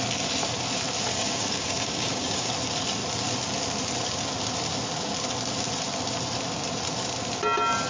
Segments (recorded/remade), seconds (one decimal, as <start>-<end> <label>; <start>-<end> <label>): 0.0-1.1 recorded; 1.1-2.5 remade; 2.5-7.9 recorded